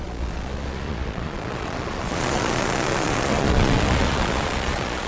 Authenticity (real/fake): fake